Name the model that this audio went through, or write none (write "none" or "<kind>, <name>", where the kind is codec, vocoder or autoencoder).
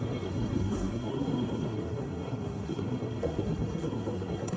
codec, SNAC